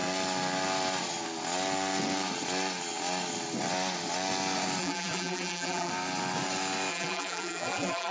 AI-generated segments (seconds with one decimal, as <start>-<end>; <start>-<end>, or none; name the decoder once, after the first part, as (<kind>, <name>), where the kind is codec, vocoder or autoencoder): 4.8-5.9 (vocoder, BigVGAN v2); 6.9-8.1